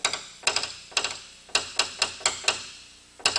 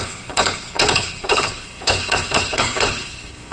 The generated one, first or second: second